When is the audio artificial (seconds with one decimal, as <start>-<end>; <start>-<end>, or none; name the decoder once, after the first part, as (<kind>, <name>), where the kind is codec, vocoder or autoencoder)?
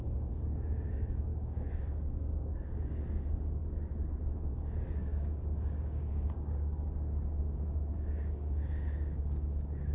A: 0.0-3.6 (codec, DAC); 4.5-9.9